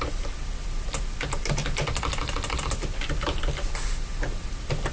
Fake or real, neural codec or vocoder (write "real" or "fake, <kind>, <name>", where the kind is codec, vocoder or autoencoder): real